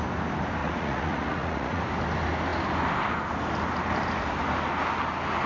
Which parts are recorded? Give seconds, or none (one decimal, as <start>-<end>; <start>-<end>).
0.0-0.6; 1.8-5.5